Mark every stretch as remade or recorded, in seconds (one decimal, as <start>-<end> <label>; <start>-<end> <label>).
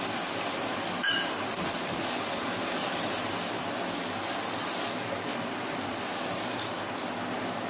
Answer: 0.0-1.0 recorded; 1.0-1.5 remade; 1.5-2.8 recorded; 2.8-3.5 remade; 3.5-5.3 recorded; 5.3-6.0 remade; 6.0-7.7 recorded